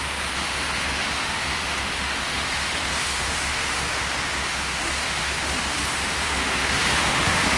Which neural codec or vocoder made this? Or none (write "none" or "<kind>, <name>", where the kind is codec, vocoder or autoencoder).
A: autoencoder, DAC-VAE